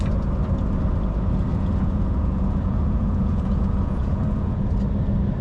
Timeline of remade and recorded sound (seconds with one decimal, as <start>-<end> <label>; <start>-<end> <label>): 0.0-1.5 recorded; 1.5-4.7 remade; 4.7-5.4 recorded